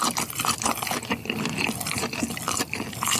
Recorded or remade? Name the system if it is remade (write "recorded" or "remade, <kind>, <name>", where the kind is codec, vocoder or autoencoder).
recorded